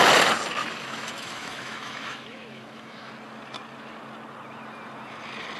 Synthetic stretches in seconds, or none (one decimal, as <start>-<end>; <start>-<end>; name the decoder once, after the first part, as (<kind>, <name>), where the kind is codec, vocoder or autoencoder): 0.6-3.1 (autoencoder, DAC-VAE)